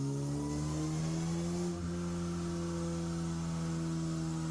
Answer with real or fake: real